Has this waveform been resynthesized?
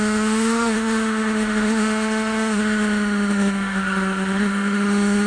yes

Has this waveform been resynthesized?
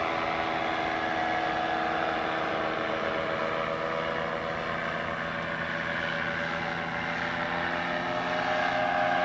no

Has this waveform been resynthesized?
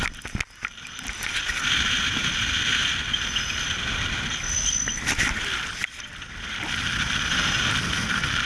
no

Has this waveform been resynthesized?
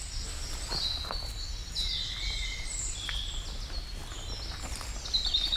no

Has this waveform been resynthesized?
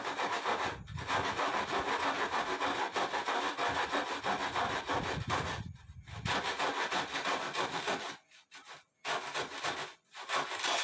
no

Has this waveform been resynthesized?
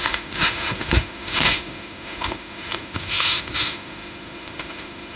yes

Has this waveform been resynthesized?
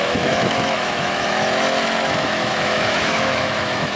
yes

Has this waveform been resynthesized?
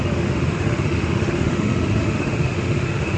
yes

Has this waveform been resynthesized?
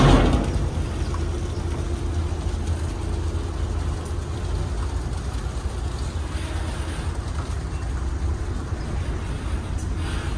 no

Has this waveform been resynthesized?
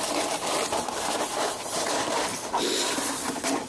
no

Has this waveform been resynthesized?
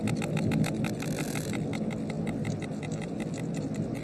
no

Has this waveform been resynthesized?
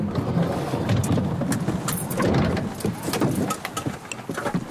no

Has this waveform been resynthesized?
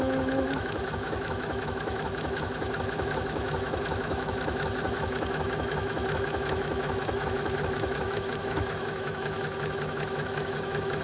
yes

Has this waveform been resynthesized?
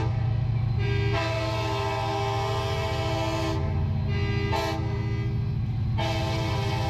no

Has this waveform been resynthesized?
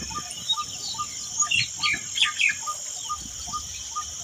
no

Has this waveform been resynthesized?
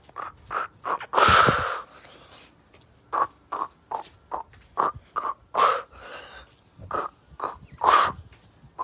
no